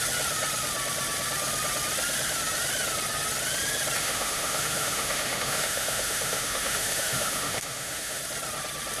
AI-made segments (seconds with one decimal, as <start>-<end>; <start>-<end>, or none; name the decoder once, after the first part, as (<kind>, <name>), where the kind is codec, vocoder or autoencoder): 4.0-8.2 (autoencoder, DAC-VAE)